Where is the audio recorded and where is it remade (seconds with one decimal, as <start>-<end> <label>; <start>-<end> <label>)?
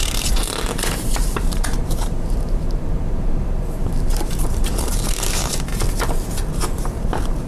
0.0-5.7 remade; 5.7-6.5 recorded; 6.5-7.5 remade